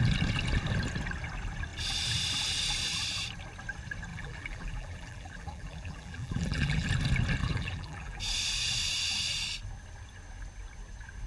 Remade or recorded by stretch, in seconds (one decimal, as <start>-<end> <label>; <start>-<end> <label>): 0.0-4.1 recorded; 4.1-6.9 remade; 6.9-7.4 recorded; 7.4-8.2 remade; 8.2-11.3 recorded